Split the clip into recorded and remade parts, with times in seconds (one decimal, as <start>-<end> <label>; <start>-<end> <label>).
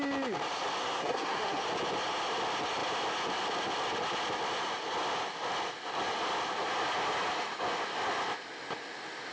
0.0-0.8 recorded; 0.8-1.6 remade; 1.6-9.3 recorded